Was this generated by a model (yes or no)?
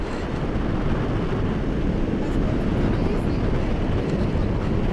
no